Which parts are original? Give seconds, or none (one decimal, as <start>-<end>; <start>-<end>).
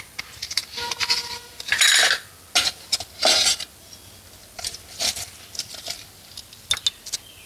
0.0-7.5